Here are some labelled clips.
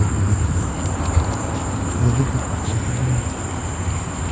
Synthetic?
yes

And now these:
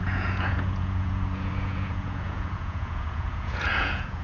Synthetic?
yes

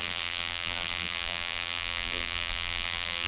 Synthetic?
yes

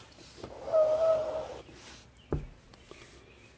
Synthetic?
no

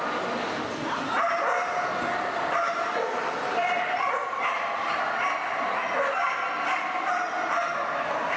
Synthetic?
no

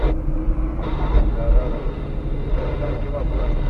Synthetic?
no